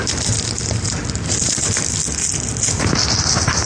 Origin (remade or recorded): remade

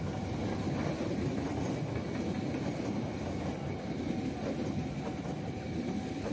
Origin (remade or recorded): recorded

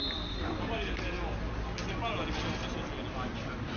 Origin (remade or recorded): recorded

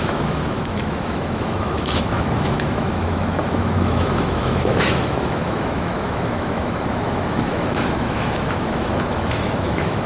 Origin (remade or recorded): remade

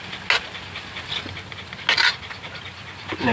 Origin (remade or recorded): recorded